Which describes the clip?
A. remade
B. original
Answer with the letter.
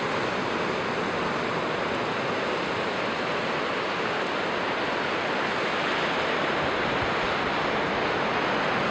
B